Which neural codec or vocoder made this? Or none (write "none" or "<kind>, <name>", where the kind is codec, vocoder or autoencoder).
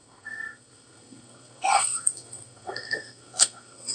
codec, SNAC